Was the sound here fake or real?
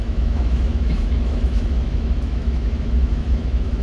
fake